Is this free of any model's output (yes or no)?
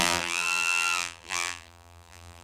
no